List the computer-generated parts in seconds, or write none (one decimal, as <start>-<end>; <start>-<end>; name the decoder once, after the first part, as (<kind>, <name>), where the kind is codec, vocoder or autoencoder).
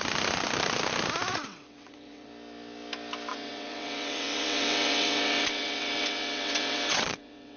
1.3-2.3 (vocoder, WaveNeXt); 3.3-7.6